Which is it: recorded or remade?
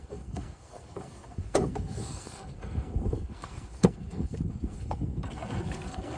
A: remade